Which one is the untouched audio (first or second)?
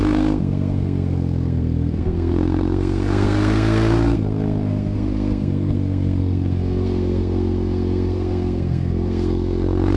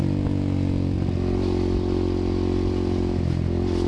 second